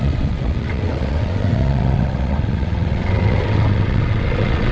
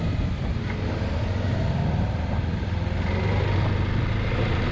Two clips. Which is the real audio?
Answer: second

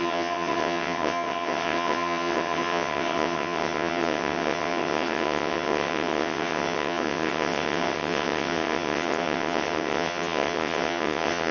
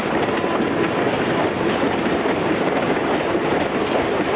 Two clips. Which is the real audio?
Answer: second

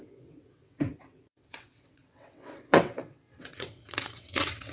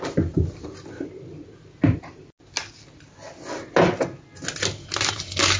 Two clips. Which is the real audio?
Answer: second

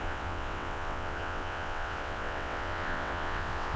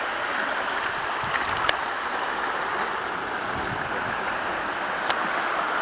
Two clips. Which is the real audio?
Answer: second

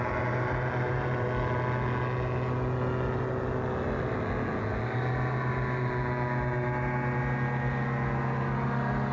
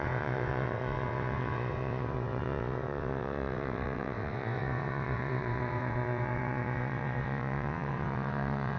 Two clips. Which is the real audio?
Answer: first